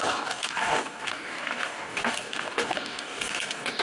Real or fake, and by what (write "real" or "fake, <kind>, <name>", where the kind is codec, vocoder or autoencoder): fake, codec, DAC